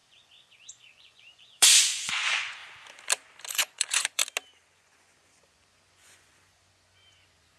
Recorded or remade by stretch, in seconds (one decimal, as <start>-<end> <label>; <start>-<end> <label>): 0.0-2.6 remade; 2.6-3.5 recorded; 3.5-4.2 remade; 4.2-4.7 recorded; 4.7-7.6 remade